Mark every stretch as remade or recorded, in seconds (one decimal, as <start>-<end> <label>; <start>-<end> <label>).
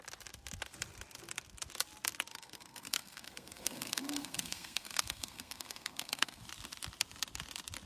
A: 0.0-2.3 recorded; 2.3-6.4 remade; 6.4-7.9 recorded